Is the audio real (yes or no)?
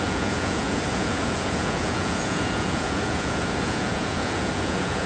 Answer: no